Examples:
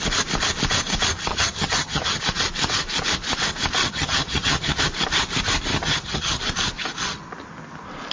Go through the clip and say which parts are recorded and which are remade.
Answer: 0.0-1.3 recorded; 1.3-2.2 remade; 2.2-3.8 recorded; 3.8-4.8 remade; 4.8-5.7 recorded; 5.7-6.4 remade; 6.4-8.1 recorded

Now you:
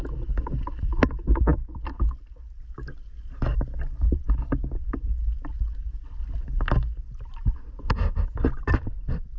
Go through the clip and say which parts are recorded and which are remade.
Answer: 0.0-9.4 recorded

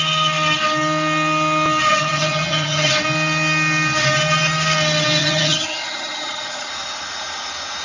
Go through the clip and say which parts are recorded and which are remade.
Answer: 0.0-1.9 recorded; 1.9-2.9 remade; 2.9-5.2 recorded; 5.2-6.7 remade; 6.7-7.8 recorded

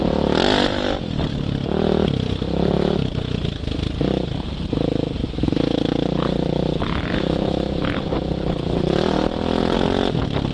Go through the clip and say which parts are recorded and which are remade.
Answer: 0.0-10.5 recorded

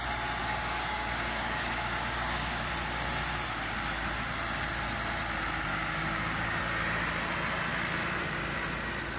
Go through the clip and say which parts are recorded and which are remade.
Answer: 0.0-0.4 recorded; 0.4-2.7 remade; 2.7-5.7 recorded; 5.7-6.6 remade; 6.6-9.2 recorded

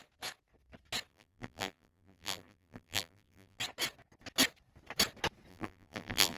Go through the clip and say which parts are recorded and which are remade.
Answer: 0.0-1.1 recorded; 1.1-3.6 remade; 3.6-5.5 recorded; 5.5-6.4 remade